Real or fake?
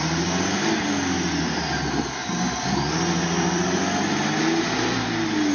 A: real